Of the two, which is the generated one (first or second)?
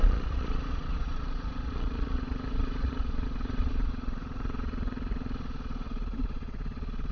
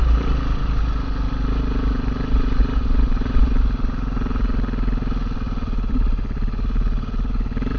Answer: first